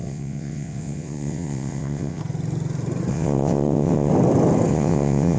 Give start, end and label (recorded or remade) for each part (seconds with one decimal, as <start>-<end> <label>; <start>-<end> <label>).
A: 0.0-2.2 remade; 2.2-3.1 recorded; 3.1-4.1 remade; 4.1-4.7 recorded; 4.7-5.4 remade